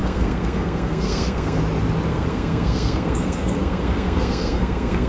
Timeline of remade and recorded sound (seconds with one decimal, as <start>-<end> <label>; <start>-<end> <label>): 0.0-1.6 remade; 1.6-2.1 recorded; 2.1-5.1 remade